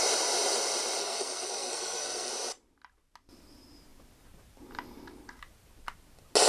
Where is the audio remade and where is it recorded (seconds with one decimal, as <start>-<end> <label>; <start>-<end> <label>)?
0.0-1.0 recorded; 1.0-2.3 remade; 2.3-6.5 recorded